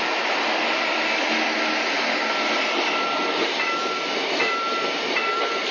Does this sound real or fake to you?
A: real